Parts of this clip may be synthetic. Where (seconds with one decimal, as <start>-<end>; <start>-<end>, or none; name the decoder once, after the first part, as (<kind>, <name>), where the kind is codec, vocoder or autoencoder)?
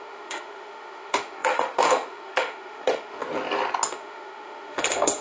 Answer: 0.0-3.2 (autoencoder, DAC-VAE); 3.9-5.2